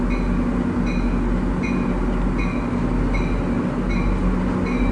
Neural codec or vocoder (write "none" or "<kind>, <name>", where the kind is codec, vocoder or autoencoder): none